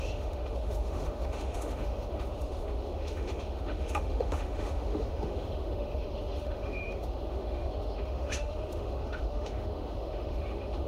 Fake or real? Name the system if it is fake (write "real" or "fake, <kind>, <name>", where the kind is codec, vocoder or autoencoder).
fake, autoencoder, DAC-VAE